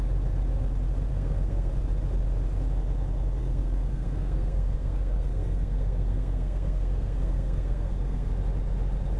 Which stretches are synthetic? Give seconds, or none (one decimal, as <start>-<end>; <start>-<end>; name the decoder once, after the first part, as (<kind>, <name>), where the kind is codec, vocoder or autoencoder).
1.1-1.7 (codec, SNAC); 3.4-8.3